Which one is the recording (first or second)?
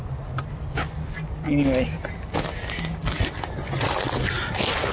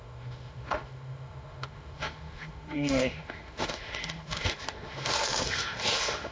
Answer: first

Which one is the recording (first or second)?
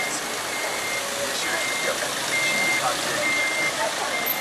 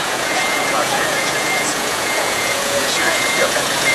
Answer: first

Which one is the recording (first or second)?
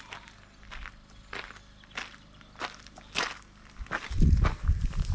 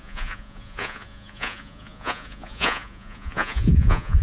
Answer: first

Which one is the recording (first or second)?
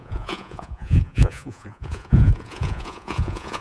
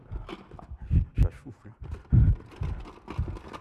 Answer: second